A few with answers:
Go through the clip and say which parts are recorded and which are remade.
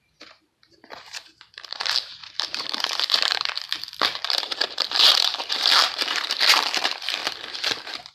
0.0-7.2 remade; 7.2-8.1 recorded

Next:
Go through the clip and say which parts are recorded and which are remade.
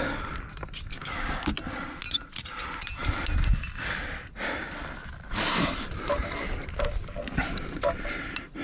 0.0-0.9 recorded; 0.9-1.5 remade; 1.5-8.6 recorded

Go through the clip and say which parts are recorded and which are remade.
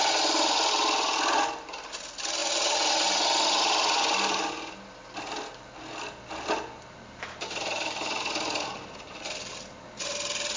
0.0-10.6 recorded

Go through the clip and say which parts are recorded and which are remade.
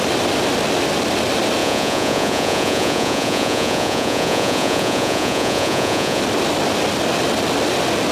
0.0-1.6 recorded; 1.6-6.2 remade; 6.2-8.1 recorded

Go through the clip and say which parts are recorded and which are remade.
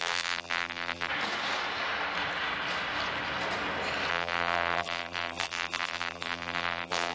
0.0-1.1 remade; 1.1-4.1 recorded; 4.1-7.1 remade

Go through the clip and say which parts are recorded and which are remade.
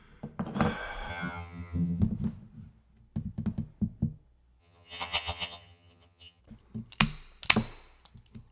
0.0-1.1 recorded; 1.1-2.0 remade; 2.0-4.6 recorded; 4.6-6.4 remade; 6.4-8.5 recorded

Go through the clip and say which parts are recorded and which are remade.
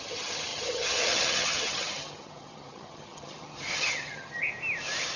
0.0-4.4 remade; 4.4-5.2 recorded